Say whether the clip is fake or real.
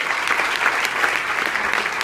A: real